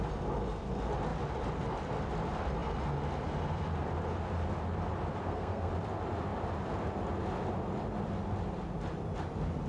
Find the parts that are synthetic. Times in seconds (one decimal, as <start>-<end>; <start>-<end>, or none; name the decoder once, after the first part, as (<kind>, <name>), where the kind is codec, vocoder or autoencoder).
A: 5.2-5.7 (codec, SNAC)